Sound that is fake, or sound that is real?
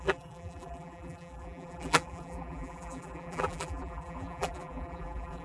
fake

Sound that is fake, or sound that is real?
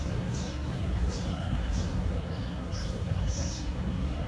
fake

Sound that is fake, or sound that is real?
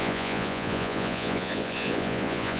fake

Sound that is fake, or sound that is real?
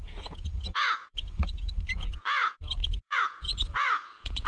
fake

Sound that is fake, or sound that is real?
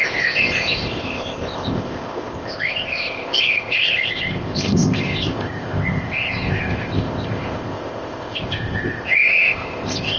fake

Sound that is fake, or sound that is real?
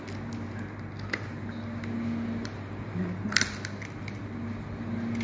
real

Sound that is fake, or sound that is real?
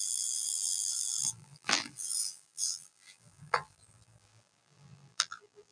fake